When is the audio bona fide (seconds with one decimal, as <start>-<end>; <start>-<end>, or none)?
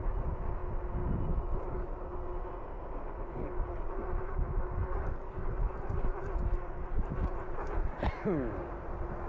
0.0-4.8; 5.5-9.3